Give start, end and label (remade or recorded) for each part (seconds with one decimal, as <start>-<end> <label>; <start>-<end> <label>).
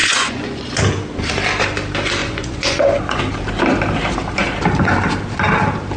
0.0-0.8 remade; 0.8-2.2 recorded; 2.2-3.2 remade; 3.2-6.0 recorded